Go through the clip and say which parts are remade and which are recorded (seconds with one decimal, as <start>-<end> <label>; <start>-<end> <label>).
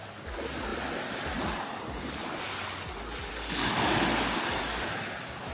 0.0-0.7 recorded; 0.7-1.6 remade; 1.6-5.5 recorded